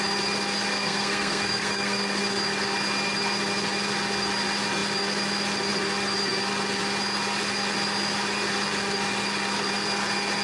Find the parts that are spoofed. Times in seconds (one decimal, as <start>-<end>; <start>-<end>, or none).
0.7-2.2